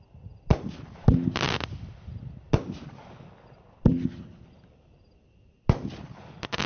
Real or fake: real